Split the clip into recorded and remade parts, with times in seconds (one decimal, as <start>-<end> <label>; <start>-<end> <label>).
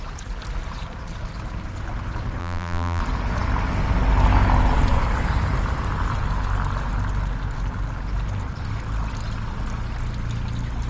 0.0-2.4 recorded; 2.4-3.0 remade; 3.0-10.9 recorded